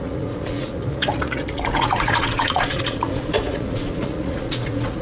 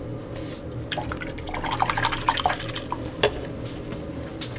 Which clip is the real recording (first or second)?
second